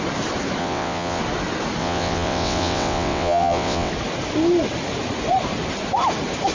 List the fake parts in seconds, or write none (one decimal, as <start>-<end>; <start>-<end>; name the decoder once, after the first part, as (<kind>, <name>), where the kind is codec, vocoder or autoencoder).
0.6-1.2 (vocoder, WaveNeXt); 1.8-3.9